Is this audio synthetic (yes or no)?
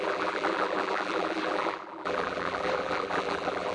yes